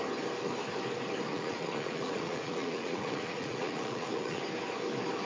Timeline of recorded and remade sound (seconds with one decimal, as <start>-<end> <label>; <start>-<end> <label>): 0.0-1.3 recorded; 1.3-4.4 remade; 4.4-5.2 recorded